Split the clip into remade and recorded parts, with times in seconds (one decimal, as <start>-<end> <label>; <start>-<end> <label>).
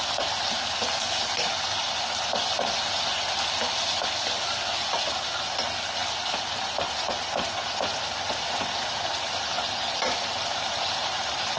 0.0-10.3 recorded; 10.3-11.6 remade